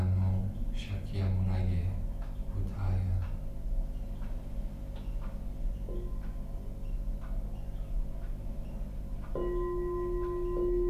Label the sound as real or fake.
real